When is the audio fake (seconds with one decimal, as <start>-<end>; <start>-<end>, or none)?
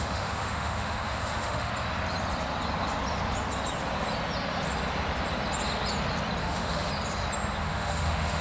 0.0-1.7; 6.4-6.9; 7.6-8.4